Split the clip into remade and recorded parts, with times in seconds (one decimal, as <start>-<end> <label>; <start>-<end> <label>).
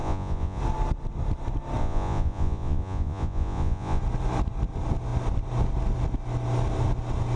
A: 0.0-0.6 remade; 0.6-1.8 recorded; 1.8-4.0 remade; 4.0-7.4 recorded